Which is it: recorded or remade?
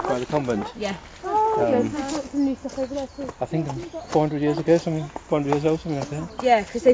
recorded